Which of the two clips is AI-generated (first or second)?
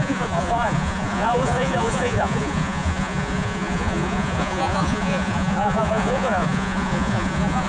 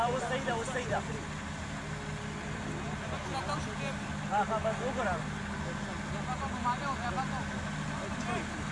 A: first